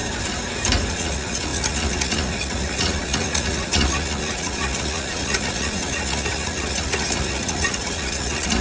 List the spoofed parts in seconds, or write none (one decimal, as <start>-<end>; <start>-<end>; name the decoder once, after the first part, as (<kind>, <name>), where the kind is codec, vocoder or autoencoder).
0.9-8.6 (vocoder, Vocos)